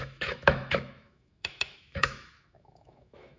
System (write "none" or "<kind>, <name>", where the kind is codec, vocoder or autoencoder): autoencoder, DAC-VAE